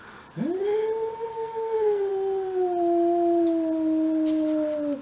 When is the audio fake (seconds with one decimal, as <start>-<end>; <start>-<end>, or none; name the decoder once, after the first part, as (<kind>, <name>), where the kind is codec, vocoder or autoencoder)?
1.3-2.1 (codec, SNAC)